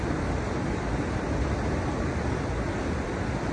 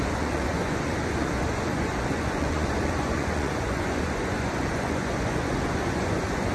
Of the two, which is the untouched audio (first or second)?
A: first